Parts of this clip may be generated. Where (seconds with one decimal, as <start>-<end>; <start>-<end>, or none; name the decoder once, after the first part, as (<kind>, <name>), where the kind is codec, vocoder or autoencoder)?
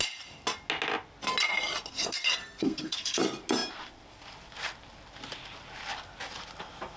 1.9-3.2 (codec, SNAC)